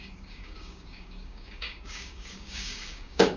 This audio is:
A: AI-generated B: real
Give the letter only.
A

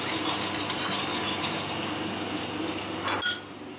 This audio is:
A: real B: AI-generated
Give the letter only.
A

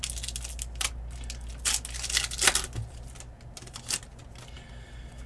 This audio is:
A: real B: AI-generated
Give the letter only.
A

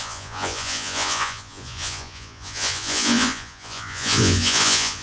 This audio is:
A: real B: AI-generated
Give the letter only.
B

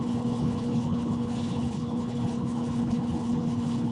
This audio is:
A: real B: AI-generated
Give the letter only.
B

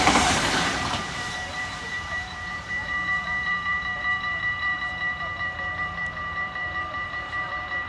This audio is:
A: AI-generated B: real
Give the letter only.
A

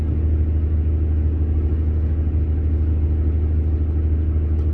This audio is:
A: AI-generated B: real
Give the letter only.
B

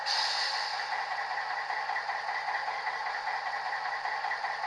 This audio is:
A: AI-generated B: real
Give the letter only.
B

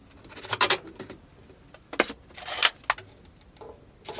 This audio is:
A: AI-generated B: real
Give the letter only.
B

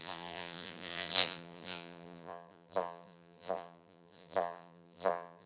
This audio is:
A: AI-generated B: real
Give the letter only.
A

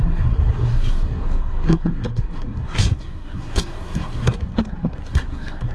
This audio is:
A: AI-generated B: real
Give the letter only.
A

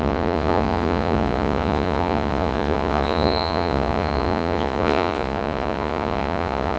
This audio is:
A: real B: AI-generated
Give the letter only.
B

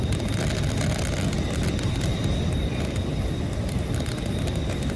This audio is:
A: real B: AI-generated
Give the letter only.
A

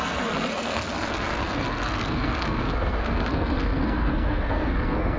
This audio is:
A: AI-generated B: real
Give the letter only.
A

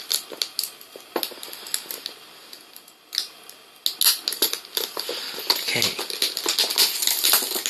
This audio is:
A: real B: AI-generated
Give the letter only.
A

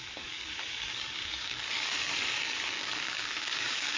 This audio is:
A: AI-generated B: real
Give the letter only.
A